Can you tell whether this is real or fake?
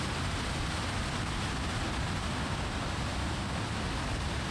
real